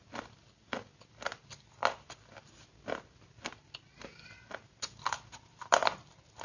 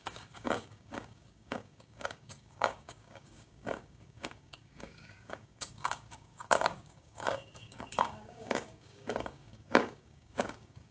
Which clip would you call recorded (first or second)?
first